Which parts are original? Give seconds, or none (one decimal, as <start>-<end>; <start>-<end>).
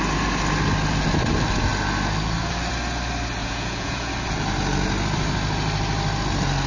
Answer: 0.0-3.4; 4.1-6.7